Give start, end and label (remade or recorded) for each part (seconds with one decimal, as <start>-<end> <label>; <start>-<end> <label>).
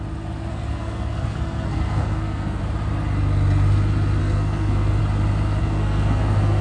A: 0.0-0.5 recorded; 0.5-2.6 remade; 2.6-4.2 recorded; 4.2-5.0 remade; 5.0-5.6 recorded; 5.6-6.6 remade